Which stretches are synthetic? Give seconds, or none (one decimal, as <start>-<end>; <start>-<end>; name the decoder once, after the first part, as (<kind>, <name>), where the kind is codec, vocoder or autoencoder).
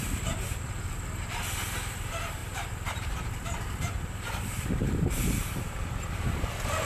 2.4-6.5 (vocoder, BigVGAN v2)